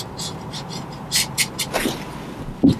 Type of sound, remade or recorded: recorded